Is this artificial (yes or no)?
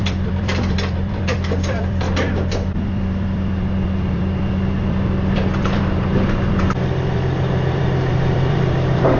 yes